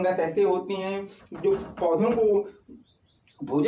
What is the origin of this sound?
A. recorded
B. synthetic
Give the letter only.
B